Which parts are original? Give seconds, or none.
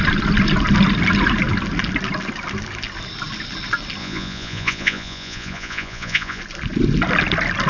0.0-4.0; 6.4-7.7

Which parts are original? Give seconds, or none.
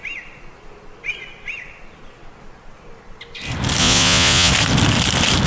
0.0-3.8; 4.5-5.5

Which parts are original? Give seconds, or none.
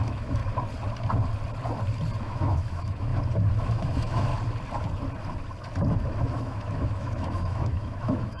0.4-2.2; 3.1-3.6; 4.3-6.3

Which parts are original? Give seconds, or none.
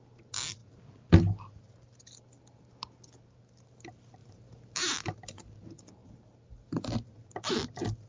0.0-4.2; 4.8-6.0; 7.3-8.1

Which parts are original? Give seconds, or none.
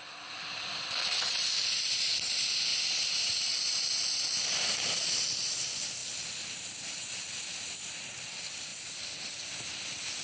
6.0-7.4; 8.7-10.2